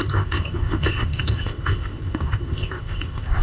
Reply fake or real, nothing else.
fake